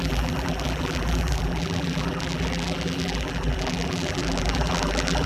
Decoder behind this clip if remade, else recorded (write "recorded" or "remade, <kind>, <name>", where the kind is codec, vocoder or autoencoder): remade, vocoder, BigVGAN v2